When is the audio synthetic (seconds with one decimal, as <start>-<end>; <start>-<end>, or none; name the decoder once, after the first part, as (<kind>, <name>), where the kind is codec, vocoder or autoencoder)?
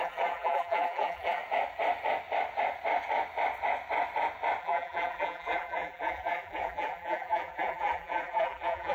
0.0-1.4 (vocoder, BigVGAN v2); 4.6-8.9